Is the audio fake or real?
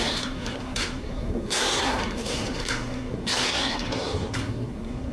fake